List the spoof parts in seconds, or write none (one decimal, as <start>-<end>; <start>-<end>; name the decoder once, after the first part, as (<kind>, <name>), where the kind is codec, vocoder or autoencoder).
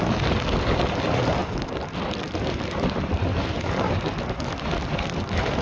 none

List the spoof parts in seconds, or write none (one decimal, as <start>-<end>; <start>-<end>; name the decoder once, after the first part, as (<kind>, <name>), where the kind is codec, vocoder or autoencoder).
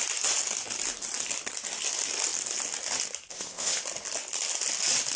3.3-3.8 (codec, ZipCodec)